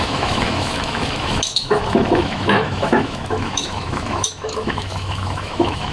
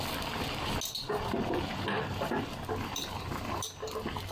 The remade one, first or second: first